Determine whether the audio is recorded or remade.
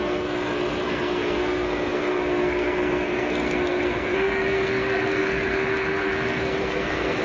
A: remade